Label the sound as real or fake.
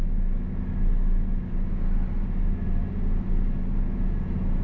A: real